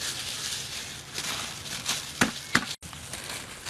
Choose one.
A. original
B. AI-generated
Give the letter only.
A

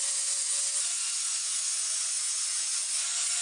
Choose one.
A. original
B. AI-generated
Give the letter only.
B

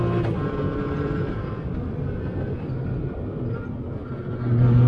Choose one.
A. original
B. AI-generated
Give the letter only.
A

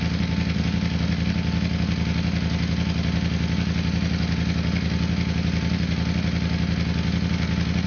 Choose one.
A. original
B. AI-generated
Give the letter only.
A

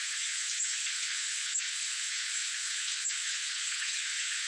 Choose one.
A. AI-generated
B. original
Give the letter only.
A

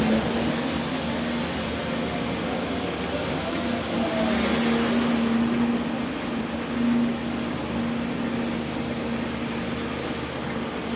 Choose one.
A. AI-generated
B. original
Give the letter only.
B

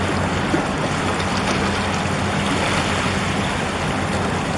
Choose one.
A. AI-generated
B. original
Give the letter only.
B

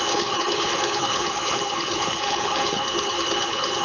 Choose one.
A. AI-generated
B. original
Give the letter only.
A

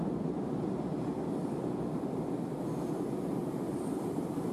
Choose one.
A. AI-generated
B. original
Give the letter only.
A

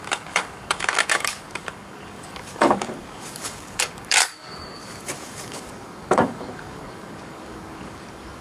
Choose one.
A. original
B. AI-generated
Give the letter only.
B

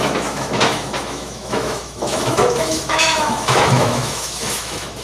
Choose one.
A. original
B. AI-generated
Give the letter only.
B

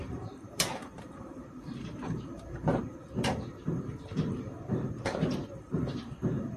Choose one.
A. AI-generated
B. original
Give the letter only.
A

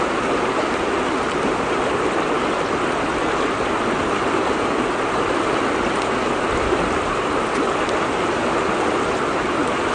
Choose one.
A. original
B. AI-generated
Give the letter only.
A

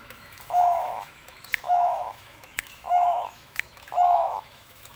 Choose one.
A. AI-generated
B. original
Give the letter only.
A